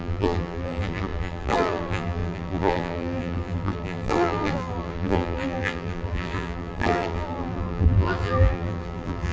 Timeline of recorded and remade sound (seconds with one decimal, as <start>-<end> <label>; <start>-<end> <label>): 0.0-9.3 remade